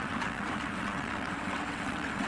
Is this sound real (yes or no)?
no